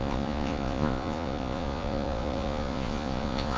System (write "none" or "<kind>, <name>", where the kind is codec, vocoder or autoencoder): vocoder, Vocos